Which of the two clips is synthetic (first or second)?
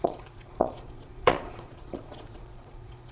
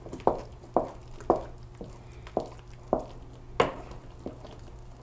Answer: first